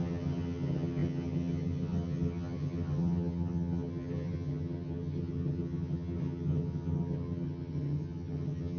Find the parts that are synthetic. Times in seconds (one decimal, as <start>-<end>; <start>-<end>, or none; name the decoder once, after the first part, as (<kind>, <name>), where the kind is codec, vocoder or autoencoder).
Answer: 0.0-8.8 (vocoder, HiFi-GAN)